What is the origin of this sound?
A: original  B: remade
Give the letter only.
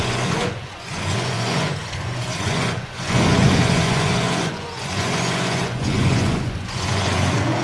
B